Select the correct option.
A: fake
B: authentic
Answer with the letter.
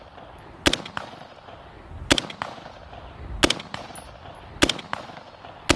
B